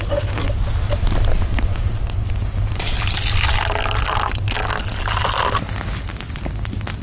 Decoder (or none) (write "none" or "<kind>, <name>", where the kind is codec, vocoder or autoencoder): none